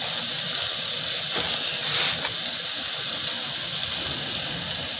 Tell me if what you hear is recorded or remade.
recorded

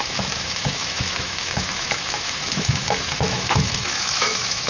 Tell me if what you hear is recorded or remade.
remade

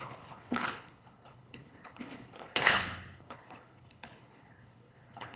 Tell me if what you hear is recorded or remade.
remade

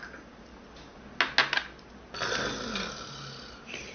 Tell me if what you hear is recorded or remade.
recorded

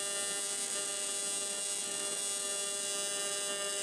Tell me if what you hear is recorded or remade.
recorded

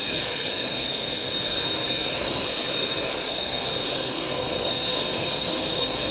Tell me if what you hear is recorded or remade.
remade